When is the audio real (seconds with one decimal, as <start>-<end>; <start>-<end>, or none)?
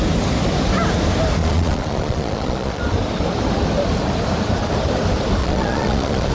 0.0-1.4; 2.8-5.4